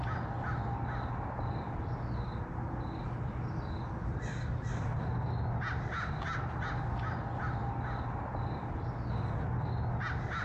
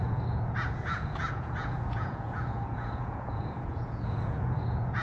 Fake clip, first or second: second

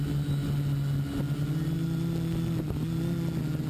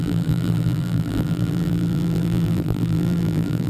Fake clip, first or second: second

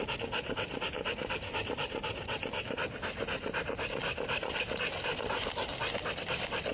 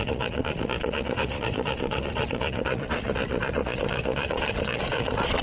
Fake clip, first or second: second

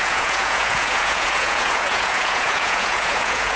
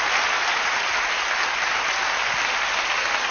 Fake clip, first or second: first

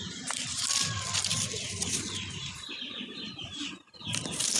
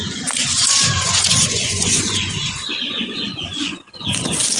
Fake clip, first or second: second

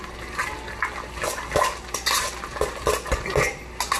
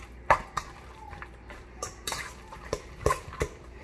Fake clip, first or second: second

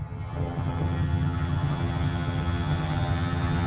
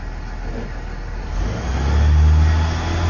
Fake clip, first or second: first